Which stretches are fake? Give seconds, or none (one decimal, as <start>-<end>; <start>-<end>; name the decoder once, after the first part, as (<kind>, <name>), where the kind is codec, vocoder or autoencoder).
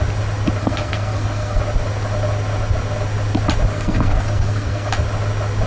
0.6-1.6 (codec, SNAC); 3.7-4.9